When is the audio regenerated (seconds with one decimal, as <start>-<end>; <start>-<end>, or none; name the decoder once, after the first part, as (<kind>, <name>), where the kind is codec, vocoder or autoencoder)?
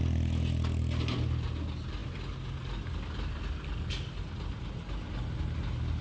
none